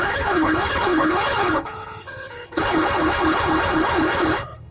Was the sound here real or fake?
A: fake